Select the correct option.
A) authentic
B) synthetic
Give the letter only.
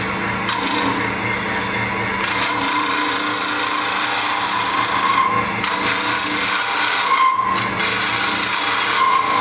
A